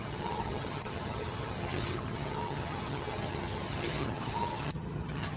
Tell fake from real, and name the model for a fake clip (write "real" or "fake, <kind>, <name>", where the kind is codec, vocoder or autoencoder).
fake, vocoder, HiFi-GAN